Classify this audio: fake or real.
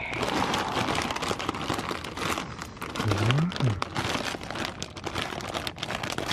real